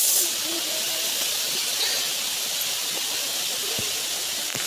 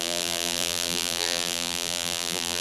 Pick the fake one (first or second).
second